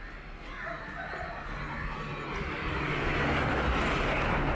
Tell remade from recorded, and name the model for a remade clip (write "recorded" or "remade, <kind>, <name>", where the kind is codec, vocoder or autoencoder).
recorded